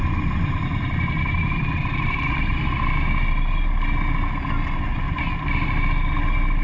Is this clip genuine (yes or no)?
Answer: yes